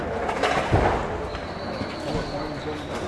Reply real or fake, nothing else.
real